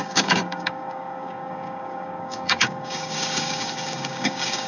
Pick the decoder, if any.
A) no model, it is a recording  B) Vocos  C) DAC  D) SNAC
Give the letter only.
C